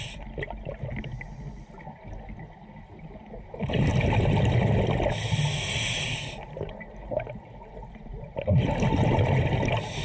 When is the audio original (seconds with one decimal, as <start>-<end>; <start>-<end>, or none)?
0.0-10.0